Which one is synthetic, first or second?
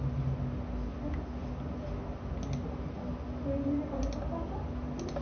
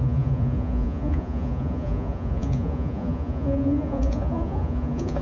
second